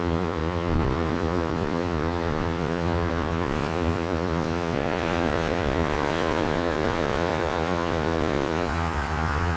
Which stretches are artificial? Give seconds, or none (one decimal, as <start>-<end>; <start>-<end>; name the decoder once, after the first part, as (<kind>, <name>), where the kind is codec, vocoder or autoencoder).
0.0-9.6 (vocoder, Vocos)